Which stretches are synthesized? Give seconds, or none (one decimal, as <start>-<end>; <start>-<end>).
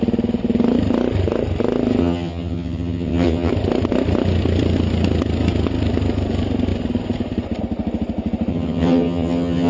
2.0-3.5; 8.5-9.7